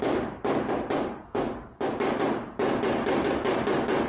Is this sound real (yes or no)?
yes